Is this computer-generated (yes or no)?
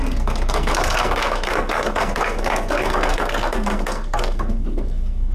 yes